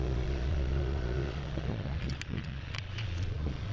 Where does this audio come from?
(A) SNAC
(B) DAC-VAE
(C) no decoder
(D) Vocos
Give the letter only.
D